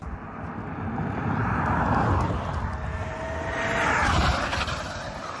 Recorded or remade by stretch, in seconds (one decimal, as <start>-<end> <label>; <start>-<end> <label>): 0.0-5.4 recorded